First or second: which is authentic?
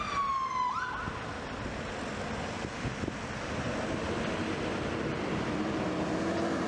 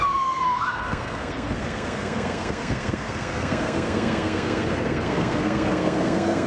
first